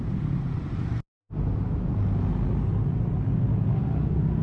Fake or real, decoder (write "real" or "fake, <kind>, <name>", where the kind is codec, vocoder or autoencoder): real